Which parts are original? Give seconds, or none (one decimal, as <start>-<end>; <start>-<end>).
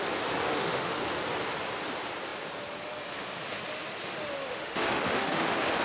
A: 0.0-0.4; 1.0-4.5